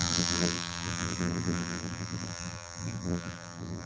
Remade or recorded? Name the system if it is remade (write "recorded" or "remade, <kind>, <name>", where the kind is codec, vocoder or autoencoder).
remade, vocoder, BigVGAN v2